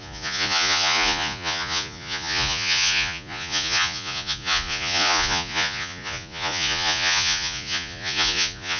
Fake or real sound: fake